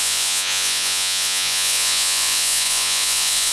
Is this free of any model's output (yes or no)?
no